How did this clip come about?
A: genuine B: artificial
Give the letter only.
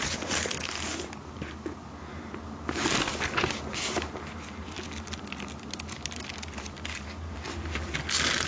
A